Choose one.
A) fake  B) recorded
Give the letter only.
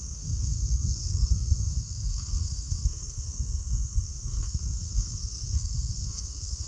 A